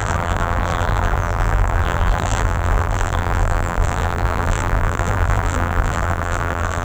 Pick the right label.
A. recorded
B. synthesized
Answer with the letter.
B